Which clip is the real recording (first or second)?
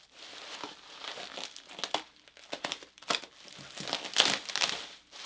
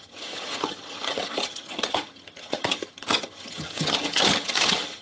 first